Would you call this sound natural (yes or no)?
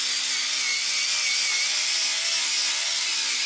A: yes